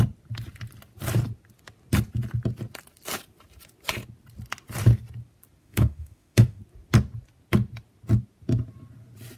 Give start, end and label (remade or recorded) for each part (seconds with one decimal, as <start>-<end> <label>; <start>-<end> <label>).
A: 0.0-5.6 recorded; 5.6-6.6 remade; 6.6-9.4 recorded

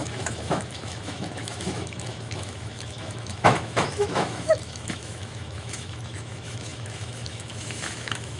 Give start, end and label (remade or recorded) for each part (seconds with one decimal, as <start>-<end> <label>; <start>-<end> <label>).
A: 0.0-8.4 remade